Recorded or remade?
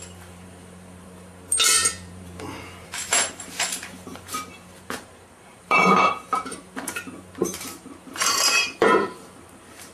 remade